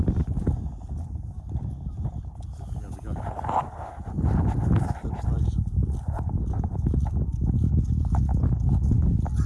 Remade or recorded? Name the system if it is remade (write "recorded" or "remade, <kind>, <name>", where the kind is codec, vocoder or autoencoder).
recorded